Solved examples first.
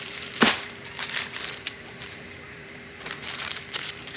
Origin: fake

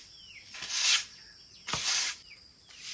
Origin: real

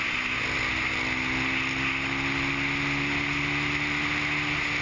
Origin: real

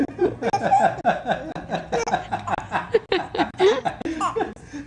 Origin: real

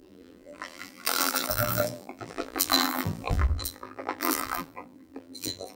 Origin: fake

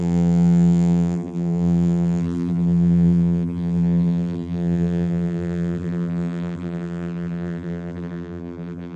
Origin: fake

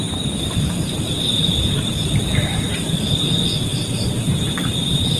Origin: fake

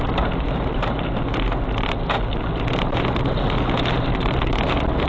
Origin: fake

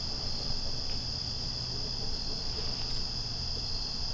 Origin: real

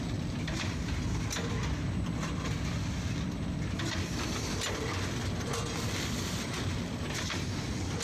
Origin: real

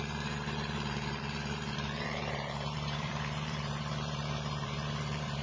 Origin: fake